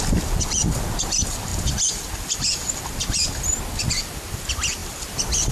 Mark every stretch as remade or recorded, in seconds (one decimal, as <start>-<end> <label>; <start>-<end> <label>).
0.0-5.5 recorded